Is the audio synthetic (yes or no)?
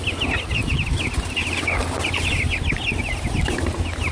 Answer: no